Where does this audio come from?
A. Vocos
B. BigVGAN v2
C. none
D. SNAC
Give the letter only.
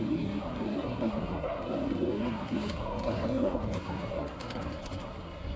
D